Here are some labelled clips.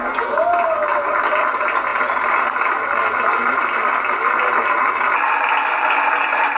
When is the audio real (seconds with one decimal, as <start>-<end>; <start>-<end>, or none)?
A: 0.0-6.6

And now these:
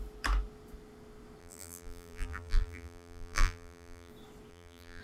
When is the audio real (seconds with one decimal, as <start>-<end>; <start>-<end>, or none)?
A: 0.0-1.4; 4.1-4.5

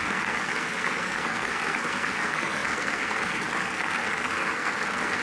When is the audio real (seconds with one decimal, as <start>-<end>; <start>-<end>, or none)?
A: none